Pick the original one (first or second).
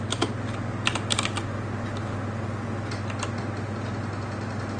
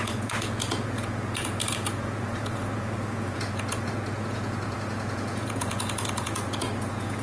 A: first